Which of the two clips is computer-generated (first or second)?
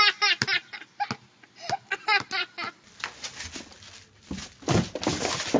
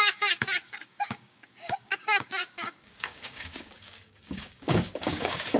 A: second